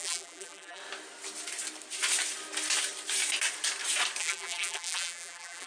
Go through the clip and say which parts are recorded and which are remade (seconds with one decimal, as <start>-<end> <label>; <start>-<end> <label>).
0.0-0.8 remade; 0.8-4.2 recorded; 4.2-5.7 remade